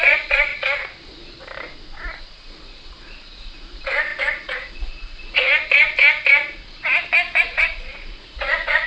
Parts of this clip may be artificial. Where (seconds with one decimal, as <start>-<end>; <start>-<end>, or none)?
0.0-0.5; 2.2-5.5; 7.4-8.9